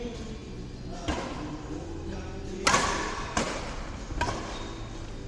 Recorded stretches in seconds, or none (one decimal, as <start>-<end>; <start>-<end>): 0.0-5.3